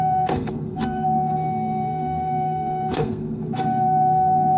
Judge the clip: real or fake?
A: fake